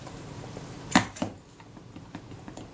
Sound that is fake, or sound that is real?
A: fake